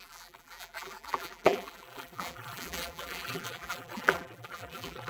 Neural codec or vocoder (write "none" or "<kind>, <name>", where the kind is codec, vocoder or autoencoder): vocoder, BigVGAN v2